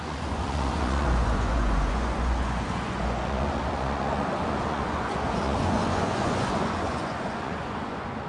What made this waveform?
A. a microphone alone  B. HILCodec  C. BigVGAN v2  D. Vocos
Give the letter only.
D